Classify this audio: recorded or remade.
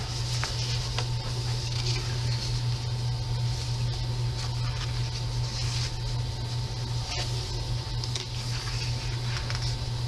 recorded